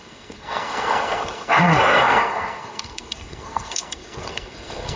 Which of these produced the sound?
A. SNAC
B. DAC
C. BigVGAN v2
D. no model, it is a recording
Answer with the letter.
A